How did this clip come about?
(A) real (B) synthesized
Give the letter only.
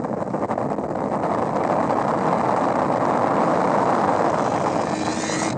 A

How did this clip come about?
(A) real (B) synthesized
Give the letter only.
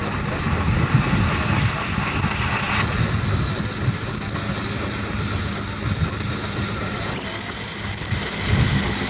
A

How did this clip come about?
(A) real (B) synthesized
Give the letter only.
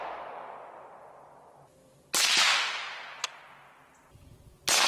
A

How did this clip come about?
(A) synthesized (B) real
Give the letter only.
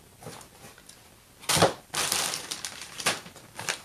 A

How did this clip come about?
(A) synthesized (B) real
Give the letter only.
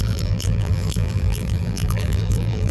A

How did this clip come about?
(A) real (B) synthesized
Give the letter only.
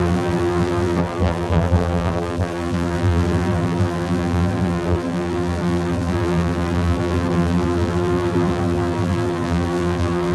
B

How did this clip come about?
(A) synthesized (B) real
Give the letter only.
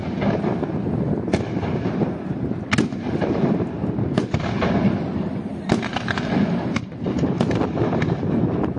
B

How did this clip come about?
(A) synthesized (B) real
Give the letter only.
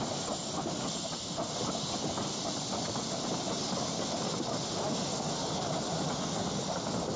B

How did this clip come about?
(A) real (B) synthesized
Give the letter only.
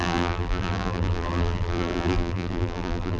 B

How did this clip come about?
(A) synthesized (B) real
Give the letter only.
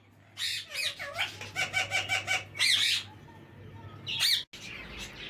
B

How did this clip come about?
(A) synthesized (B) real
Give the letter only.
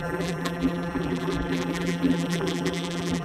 A